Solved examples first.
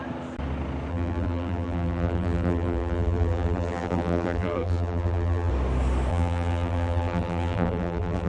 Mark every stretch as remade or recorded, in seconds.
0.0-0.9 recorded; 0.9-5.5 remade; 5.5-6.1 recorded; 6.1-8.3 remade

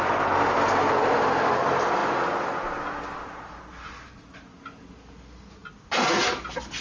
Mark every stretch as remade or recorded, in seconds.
0.0-2.0 recorded; 2.0-2.5 remade; 2.5-6.8 recorded